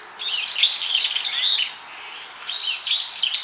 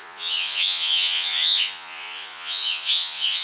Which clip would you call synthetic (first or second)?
second